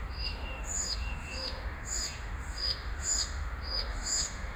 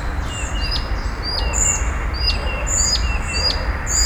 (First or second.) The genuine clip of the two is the second